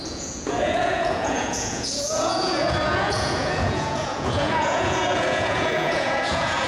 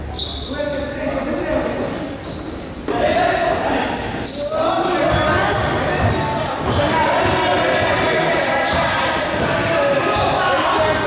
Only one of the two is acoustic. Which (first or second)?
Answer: second